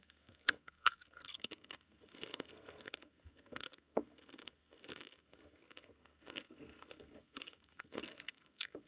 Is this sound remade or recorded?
remade